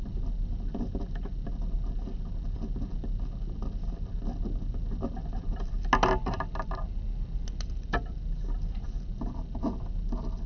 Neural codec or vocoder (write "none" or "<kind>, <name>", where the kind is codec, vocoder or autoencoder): none